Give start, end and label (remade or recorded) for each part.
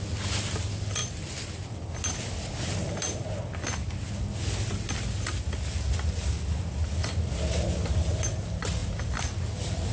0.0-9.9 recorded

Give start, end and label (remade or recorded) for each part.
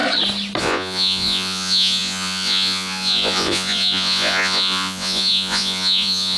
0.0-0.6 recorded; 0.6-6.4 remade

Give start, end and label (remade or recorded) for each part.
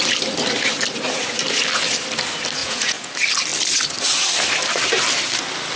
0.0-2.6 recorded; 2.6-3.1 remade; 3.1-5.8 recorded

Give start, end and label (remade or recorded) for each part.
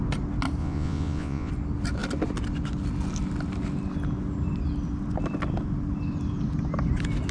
0.0-0.6 recorded; 0.6-1.5 remade; 1.5-7.3 recorded